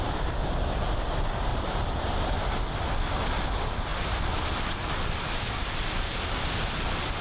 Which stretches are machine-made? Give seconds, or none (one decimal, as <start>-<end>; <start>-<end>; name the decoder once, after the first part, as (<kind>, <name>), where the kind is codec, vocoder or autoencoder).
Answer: 1.5-2.5 (vocoder, BigVGAN v2)